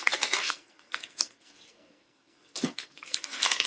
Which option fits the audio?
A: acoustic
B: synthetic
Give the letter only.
B